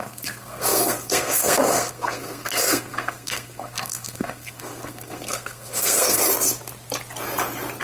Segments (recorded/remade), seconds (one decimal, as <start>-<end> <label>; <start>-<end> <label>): 0.0-6.2 remade; 6.2-7.8 recorded